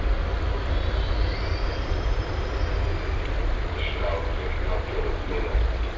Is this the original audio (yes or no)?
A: yes